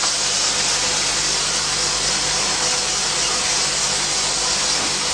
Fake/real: real